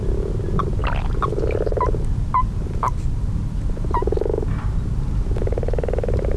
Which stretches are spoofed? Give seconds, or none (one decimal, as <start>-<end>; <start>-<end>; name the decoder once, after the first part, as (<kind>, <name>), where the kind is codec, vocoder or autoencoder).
none